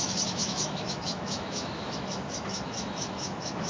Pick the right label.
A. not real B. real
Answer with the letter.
A